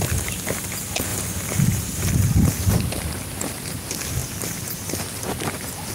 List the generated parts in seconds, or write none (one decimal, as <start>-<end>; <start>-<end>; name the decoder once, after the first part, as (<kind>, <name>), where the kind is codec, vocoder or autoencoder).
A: 1.1-2.1 (vocoder, BigVGAN v2); 4.2-5.9

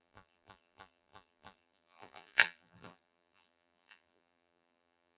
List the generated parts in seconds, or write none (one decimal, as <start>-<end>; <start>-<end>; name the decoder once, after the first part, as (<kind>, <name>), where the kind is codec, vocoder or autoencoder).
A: 0.0-5.2 (vocoder, BigVGAN v2)

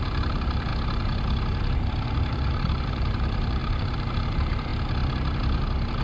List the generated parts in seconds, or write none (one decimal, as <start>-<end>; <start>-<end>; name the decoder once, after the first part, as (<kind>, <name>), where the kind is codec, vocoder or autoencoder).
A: 0.0-0.7 (vocoder, BigVGAN v2); 1.8-4.7